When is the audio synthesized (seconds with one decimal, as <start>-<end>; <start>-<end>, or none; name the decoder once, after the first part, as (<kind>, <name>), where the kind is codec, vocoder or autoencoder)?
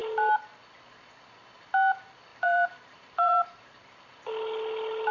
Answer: 2.3-3.8 (vocoder, BigVGAN v2)